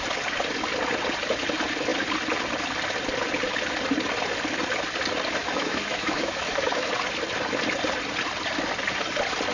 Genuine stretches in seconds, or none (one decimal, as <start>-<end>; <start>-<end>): 0.0-5.4; 6.9-9.5